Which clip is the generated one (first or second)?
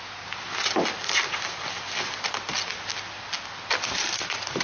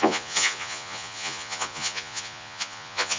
second